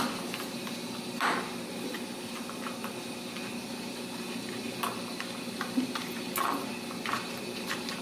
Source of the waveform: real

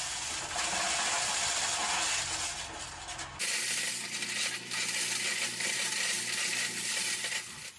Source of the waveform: real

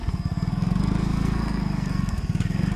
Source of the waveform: fake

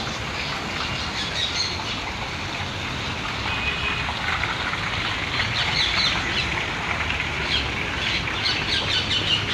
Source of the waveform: real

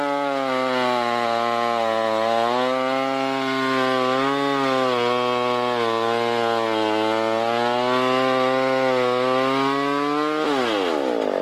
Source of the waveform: real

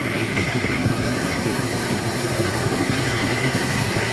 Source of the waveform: fake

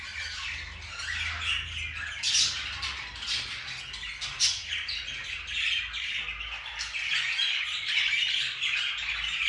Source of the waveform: real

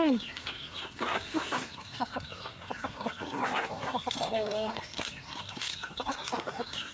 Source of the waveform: fake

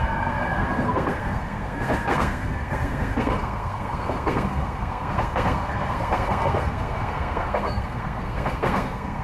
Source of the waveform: fake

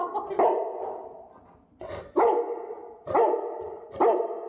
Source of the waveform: real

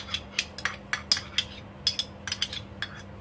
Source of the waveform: real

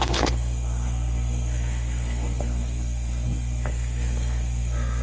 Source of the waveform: fake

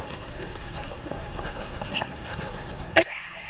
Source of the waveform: fake